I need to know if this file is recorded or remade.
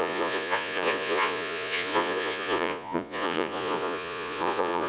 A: remade